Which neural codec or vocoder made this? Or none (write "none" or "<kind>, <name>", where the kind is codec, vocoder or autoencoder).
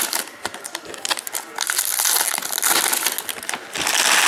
none